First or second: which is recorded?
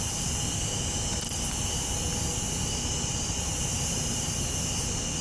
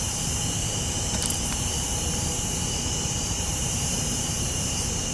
first